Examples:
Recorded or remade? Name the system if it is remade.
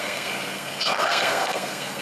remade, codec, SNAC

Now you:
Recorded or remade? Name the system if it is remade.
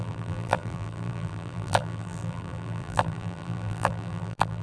remade, vocoder, BigVGAN v2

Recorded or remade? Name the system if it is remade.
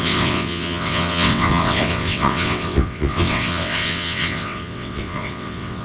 remade, vocoder, WaveNeXt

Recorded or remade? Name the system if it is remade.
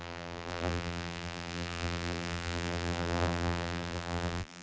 remade, vocoder, BigVGAN v2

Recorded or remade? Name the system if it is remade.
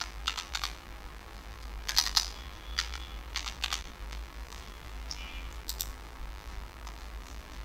remade, vocoder, BigVGAN v2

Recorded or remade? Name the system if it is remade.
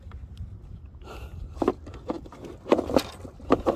recorded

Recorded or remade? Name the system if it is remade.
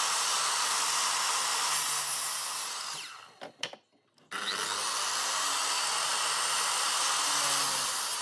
recorded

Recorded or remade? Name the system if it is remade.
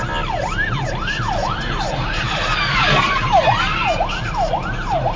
recorded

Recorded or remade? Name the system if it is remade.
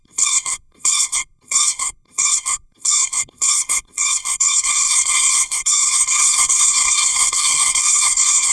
remade, codec, SNAC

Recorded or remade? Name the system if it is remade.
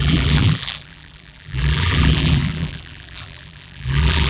remade, vocoder, BigVGAN v2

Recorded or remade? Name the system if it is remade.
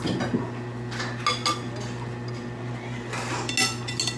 recorded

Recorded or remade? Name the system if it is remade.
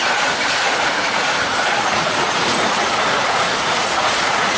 remade, vocoder, Vocos